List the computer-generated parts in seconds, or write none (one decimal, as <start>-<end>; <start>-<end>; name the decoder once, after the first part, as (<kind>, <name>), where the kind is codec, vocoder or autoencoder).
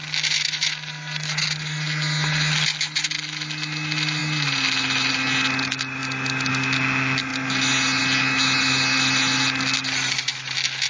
none